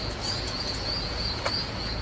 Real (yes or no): no